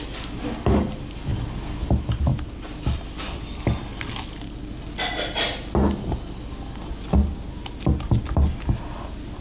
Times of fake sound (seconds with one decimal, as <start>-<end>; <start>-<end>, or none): none